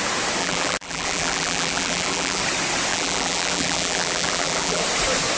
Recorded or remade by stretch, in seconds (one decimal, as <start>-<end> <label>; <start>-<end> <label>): 0.0-0.4 recorded; 0.4-2.4 remade; 2.4-2.9 recorded; 2.9-4.8 remade; 4.8-5.4 recorded